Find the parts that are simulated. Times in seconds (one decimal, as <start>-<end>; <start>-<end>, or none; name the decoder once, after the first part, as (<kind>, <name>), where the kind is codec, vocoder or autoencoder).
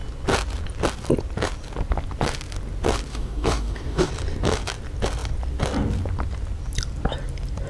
3.1-4.1 (codec, DAC)